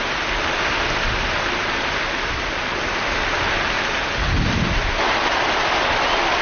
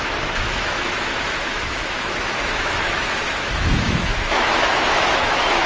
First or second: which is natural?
first